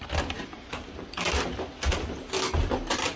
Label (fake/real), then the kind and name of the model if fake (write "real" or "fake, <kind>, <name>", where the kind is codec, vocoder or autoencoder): real